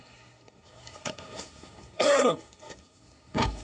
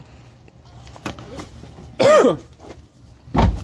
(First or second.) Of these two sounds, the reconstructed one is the first